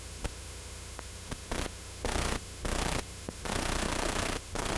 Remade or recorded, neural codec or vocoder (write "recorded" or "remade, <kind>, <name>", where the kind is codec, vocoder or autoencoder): remade, autoencoder, DAC-VAE